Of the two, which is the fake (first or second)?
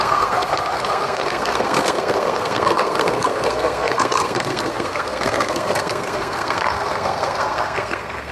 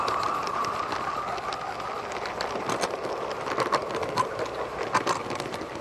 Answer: first